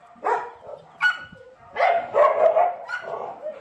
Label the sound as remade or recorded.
recorded